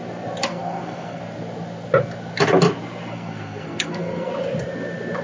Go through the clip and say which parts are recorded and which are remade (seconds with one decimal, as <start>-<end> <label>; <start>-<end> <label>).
0.0-0.5 recorded; 0.5-1.2 remade; 1.2-3.1 recorded; 3.1-4.3 remade; 4.3-5.2 recorded